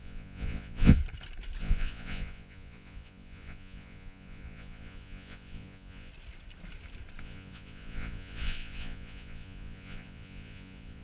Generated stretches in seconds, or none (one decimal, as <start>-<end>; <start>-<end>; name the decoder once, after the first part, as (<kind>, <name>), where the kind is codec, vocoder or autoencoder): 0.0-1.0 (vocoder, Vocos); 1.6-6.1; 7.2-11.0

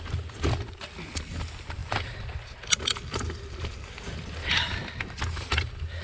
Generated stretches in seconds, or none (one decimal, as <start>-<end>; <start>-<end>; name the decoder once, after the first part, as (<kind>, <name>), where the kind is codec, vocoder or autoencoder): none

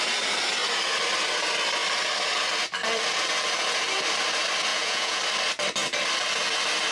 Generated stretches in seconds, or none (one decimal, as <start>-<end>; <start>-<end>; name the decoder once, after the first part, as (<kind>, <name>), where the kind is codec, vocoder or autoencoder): 4.7-5.2 (vocoder, Vocos)